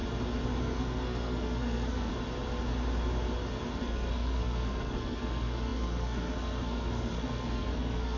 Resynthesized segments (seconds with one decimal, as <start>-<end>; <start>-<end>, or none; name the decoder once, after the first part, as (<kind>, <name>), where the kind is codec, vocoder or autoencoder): 0.6-2.1 (codec, SNAC); 3.8-8.2